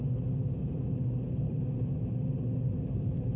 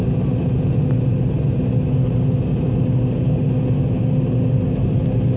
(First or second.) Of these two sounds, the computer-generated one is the first